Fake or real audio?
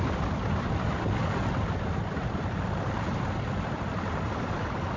real